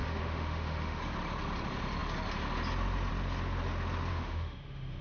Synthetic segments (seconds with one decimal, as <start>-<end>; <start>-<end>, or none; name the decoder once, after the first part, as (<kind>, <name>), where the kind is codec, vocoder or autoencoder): 0.0-1.0 (autoencoder, DAC-VAE); 4.1-5.0

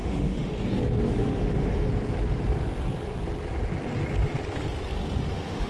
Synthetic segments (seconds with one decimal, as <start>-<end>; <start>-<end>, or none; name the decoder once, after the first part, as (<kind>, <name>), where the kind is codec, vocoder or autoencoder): 0.0-0.5 (autoencoder, DAC-VAE); 1.1-1.9; 5.3-5.7

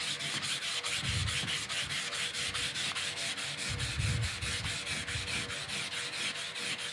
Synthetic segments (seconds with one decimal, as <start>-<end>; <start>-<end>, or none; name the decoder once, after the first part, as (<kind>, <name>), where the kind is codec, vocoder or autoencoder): none

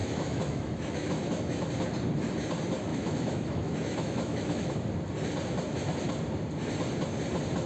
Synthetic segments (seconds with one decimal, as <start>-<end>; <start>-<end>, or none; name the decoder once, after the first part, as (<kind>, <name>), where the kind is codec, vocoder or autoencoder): 0.0-1.7 (autoencoder, DAC-VAE); 2.9-4.7